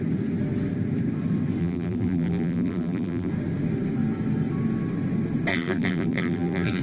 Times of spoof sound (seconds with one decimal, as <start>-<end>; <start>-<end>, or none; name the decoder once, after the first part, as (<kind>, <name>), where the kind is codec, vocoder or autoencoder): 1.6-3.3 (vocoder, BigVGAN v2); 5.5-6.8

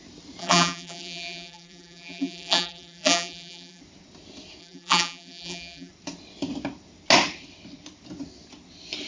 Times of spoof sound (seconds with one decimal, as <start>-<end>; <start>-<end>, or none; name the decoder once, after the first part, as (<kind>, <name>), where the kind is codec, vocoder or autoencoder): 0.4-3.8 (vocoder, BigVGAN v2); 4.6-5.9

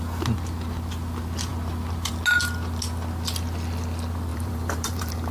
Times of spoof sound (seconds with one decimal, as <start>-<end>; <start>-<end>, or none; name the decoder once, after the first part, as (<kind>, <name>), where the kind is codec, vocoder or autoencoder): 4.3-5.3 (vocoder, BigVGAN v2)

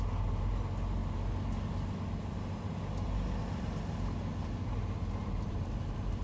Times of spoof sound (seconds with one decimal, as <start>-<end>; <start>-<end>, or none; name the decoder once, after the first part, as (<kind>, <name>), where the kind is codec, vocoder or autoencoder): 5.2-6.2 (vocoder, BigVGAN v2)

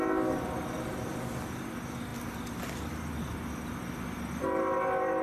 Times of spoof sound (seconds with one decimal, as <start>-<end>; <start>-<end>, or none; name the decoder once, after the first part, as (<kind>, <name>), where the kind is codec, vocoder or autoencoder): none